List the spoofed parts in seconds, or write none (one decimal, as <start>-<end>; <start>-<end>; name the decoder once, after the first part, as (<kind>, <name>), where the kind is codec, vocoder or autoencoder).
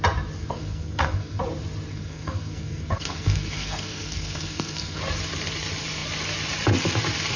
0.4-1.4 (codec, SNAC); 1.9-5.0